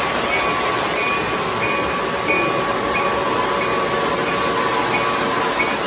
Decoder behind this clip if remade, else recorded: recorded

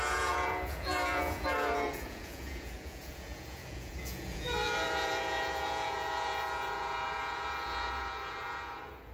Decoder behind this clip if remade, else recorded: remade, vocoder, Vocos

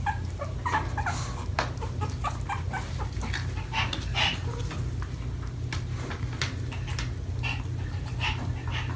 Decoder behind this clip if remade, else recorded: recorded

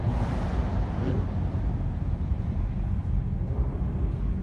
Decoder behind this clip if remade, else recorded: recorded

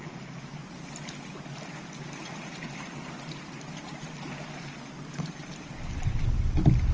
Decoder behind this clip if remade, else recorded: recorded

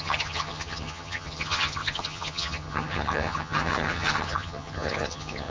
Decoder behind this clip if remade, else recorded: remade, vocoder, HiFi-GAN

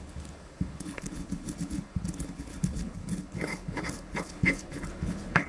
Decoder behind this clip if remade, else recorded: remade, codec, HILCodec